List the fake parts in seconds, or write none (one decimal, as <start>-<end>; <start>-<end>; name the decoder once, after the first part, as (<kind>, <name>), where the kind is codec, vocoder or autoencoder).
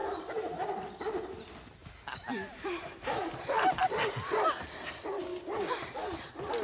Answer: 0.0-1.0 (vocoder, BigVGAN v2); 1.8-3.8; 5.3-5.9